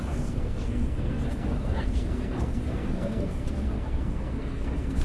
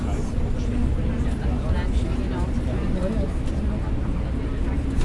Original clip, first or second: second